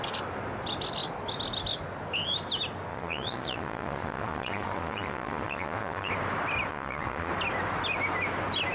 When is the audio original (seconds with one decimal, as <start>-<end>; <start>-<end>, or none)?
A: 0.0-2.9; 6.1-6.7; 7.3-8.7